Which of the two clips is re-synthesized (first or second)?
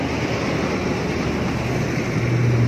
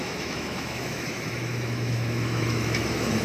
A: second